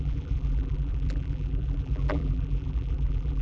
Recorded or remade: remade